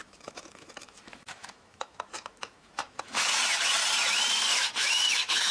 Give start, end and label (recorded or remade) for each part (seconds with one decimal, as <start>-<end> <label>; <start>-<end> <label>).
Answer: 0.0-3.3 remade; 3.3-4.5 recorded; 4.5-5.5 remade